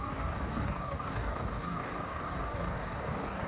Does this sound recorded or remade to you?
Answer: remade